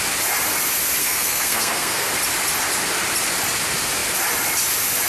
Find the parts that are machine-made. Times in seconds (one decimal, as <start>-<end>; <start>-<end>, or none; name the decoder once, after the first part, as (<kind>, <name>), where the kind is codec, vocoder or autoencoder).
1.0-2.1 (codec, SNAC)